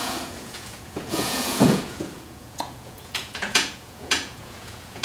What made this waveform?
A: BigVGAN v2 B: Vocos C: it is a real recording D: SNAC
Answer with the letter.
B